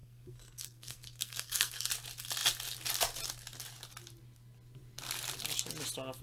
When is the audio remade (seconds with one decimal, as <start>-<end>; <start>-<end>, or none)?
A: 0.0-1.9